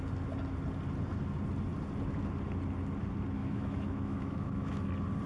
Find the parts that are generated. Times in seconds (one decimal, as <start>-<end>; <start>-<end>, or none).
3.4-4.8